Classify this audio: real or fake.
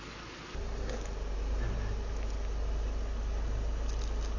real